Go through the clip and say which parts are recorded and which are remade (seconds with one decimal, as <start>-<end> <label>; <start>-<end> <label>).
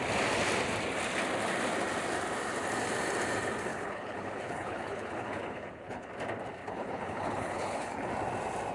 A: 0.0-3.7 recorded; 3.7-6.1 remade; 6.1-6.6 recorded; 6.6-8.1 remade; 8.1-8.7 recorded